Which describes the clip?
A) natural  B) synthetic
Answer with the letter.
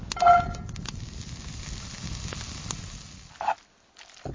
A